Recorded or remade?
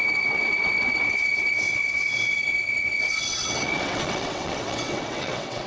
remade